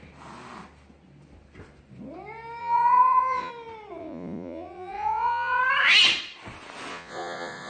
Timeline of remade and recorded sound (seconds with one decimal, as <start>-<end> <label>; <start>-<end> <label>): 0.0-2.6 recorded; 2.6-3.5 remade; 3.5-4.0 recorded; 4.0-5.6 remade; 5.6-6.9 recorded; 6.9-7.7 remade